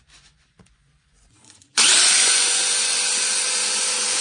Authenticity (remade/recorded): remade